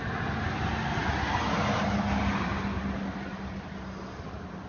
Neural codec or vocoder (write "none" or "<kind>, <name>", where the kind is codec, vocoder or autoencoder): none